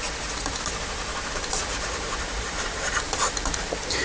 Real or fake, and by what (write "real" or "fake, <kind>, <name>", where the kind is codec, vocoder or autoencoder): fake, vocoder, BigVGAN v2